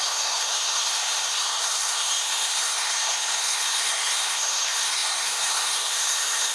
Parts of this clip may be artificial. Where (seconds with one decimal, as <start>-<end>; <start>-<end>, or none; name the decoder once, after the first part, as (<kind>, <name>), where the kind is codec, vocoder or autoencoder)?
0.0-6.5 (codec, SNAC)